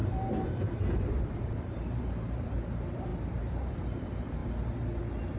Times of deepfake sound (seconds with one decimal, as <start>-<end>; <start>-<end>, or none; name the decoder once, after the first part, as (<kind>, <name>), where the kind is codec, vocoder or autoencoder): 0.0-4.4 (vocoder, BigVGAN v2)